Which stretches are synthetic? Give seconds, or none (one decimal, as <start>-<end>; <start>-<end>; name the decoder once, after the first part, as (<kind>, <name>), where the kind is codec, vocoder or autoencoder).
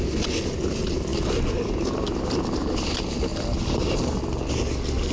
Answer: 1.1-2.2 (vocoder, BigVGAN v2); 3.3-4.2